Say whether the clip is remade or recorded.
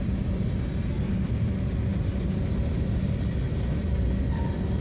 recorded